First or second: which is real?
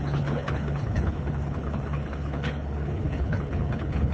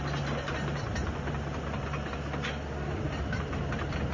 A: second